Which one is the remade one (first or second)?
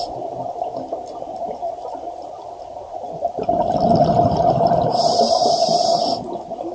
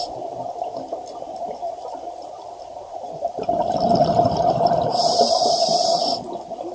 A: second